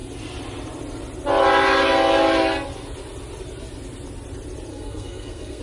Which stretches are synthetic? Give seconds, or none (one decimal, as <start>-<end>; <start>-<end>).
4.7-5.6

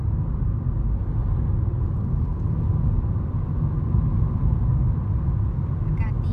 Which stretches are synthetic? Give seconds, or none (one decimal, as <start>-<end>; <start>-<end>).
none

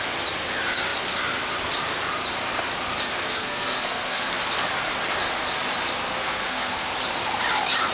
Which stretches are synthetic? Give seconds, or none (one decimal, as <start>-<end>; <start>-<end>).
3.3-4.3; 6.2-6.9

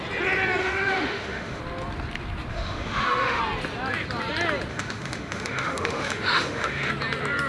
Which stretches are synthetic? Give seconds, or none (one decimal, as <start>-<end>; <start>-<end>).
0.6-1.6; 2.5-3.4; 4.7-6.9

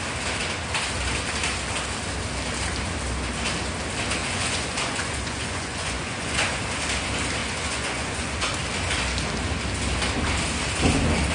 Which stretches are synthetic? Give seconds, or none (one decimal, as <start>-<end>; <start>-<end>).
4.2-6.6; 7.4-8.5

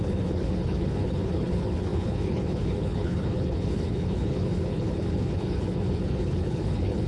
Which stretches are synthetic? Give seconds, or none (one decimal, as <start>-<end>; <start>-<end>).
0.0-7.1

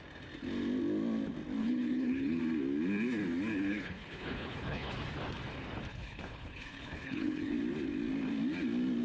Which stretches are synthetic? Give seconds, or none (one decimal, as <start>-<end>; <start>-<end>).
1.6-2.4; 3.7-4.9; 5.9-7.5

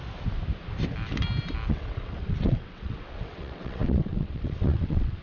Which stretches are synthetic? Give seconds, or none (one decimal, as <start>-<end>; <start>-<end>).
1.7-5.2